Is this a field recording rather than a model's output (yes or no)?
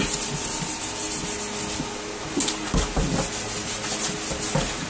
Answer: yes